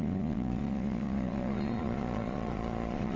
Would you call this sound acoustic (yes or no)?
no